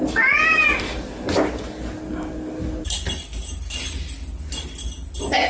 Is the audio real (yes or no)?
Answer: yes